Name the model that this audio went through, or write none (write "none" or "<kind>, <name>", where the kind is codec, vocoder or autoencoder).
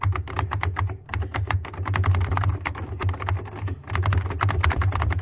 none